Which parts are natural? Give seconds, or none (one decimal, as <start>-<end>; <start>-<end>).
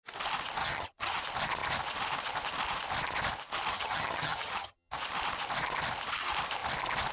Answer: 0.0-0.6; 1.2-3.7; 4.9-7.1